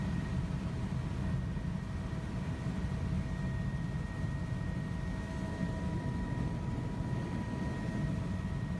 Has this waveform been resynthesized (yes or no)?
no